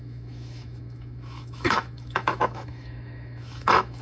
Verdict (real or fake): fake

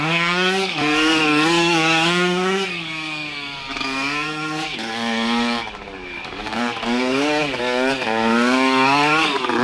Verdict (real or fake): fake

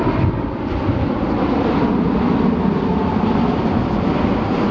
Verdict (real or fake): real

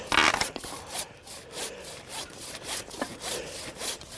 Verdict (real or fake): real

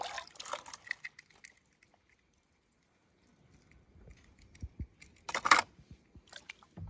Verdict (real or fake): real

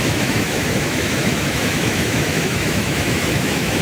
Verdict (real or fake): fake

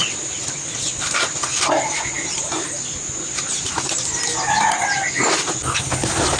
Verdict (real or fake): real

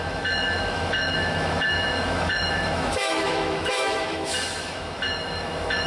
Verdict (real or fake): fake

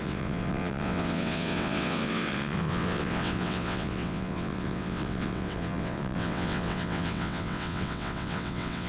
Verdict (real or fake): fake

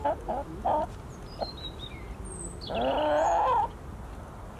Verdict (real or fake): real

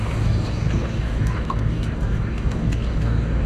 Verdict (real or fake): fake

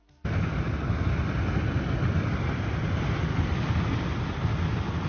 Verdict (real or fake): real